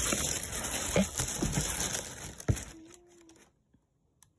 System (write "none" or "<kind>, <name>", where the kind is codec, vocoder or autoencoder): none